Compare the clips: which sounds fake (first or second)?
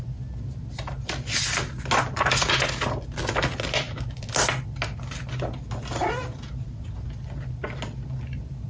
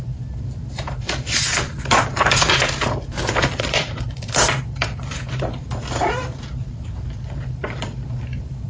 second